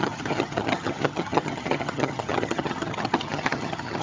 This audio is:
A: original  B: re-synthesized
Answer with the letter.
B